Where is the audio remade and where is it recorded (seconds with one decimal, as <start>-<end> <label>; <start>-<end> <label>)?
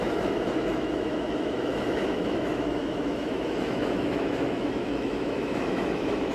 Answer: 0.0-6.3 remade